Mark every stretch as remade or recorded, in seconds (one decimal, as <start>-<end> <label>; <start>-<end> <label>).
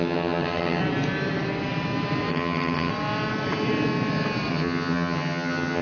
0.0-0.8 remade; 0.8-2.3 recorded; 2.3-2.9 remade; 2.9-4.5 recorded; 4.5-5.8 remade